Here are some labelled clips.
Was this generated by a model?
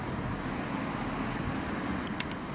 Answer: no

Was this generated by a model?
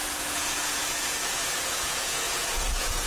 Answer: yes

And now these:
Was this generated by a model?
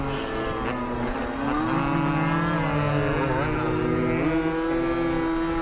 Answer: no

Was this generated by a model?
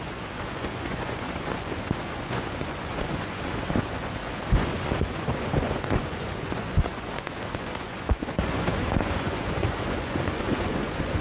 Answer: yes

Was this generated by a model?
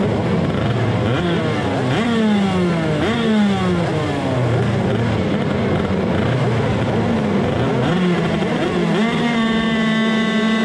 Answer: no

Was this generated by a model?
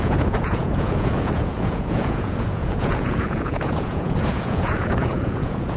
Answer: yes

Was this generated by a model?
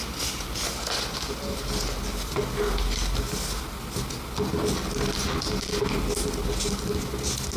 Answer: no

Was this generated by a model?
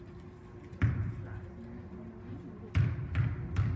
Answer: no